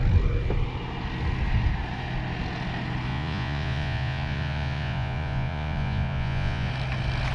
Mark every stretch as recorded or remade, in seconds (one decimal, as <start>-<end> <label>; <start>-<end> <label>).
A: 0.0-3.1 recorded; 3.1-6.7 remade; 6.7-7.3 recorded